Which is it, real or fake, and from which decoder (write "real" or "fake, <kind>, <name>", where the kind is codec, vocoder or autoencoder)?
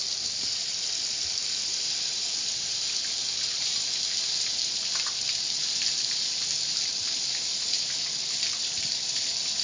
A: real